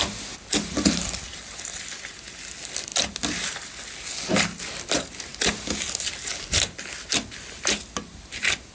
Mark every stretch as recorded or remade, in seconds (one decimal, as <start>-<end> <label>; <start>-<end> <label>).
0.0-8.7 recorded